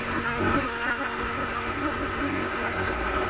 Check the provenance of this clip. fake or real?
fake